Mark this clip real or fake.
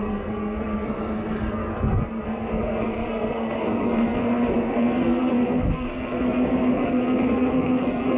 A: fake